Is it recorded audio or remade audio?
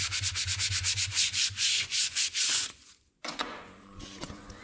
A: remade